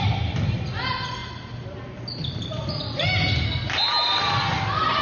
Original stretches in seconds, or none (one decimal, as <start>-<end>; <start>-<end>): 0.0-5.0